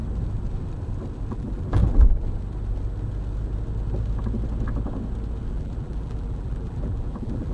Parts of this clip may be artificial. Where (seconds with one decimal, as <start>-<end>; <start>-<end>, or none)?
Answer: 1.3-1.8; 5.5-7.5